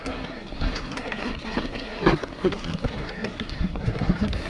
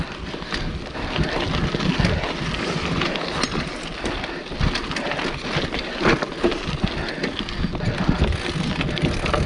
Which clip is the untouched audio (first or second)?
second